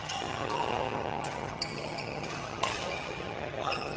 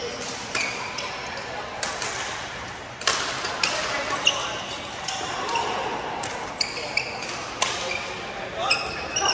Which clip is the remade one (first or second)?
first